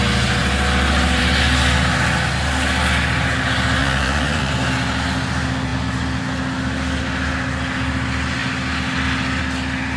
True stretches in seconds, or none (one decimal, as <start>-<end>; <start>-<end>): 0.0-3.8; 4.5-10.0